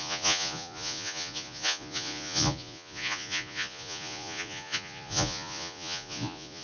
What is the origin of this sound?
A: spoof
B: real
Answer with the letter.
A